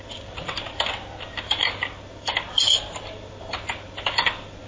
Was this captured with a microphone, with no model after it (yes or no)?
yes